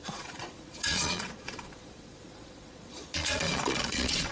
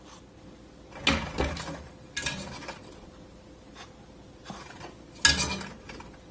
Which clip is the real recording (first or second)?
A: second